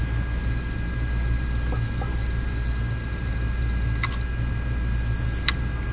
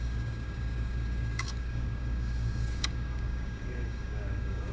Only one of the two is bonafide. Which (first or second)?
first